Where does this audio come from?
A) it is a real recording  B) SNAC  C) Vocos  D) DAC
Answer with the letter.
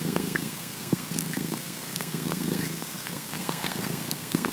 B